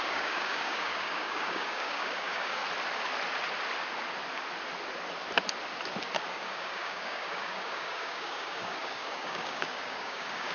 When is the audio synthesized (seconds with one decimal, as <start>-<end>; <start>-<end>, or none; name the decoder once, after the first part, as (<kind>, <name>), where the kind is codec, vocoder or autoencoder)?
0.0-2.6 (codec, DAC); 6.3-10.5